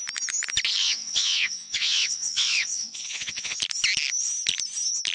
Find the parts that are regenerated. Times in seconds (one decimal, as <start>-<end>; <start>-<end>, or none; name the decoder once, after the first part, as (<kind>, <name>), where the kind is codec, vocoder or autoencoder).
0.8-3.6 (vocoder, WaveNeXt)